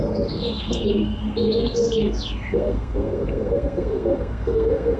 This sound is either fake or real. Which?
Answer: fake